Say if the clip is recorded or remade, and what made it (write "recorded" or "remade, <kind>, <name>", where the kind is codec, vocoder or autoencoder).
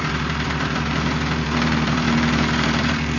remade, vocoder, BigVGAN v2